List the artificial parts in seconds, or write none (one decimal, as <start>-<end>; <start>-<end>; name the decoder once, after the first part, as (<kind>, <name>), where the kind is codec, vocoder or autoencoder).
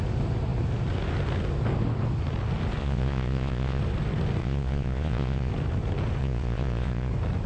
2.8-3.8 (vocoder, Vocos); 4.4-5.5; 6.2-7.1